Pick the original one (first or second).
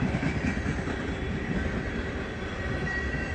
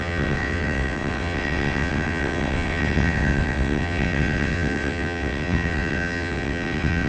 first